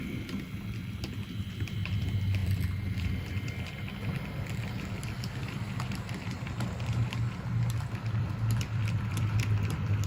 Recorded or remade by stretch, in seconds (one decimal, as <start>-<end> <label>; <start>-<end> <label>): 0.0-2.4 recorded; 2.4-3.0 remade; 3.0-5.4 recorded; 5.4-9.4 remade; 9.4-10.1 recorded